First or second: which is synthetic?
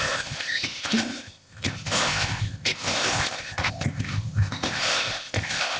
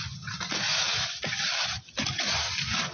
first